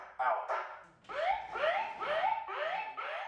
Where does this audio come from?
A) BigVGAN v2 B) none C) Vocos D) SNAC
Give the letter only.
B